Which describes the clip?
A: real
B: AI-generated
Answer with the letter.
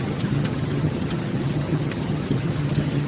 B